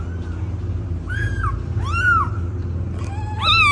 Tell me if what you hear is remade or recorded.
recorded